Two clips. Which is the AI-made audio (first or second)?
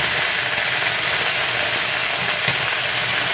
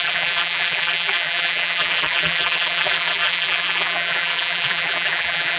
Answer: second